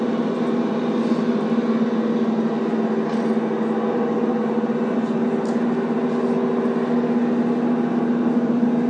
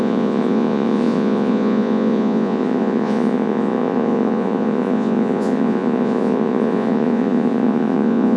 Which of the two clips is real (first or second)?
first